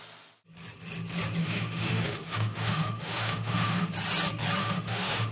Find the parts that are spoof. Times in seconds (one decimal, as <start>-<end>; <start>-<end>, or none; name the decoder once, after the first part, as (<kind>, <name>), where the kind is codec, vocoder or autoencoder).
1.4-3.9 (autoencoder, DAC-VAE); 4.6-5.3